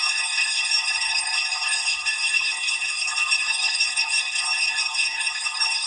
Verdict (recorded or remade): remade